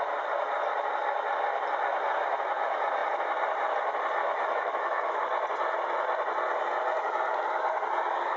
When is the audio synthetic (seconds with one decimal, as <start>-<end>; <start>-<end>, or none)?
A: 4.2-5.2